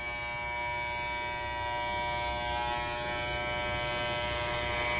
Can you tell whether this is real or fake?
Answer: real